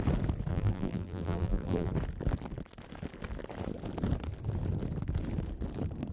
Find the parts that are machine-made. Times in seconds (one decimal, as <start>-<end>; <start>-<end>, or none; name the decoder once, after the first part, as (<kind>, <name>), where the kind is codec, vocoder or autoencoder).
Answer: 0.5-1.9 (vocoder, BigVGAN v2)